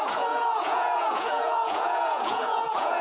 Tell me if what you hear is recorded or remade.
remade